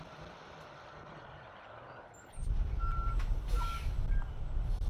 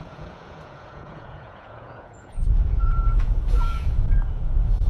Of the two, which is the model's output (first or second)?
second